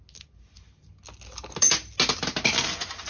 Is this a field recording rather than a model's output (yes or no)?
yes